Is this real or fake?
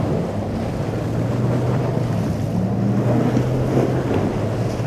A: real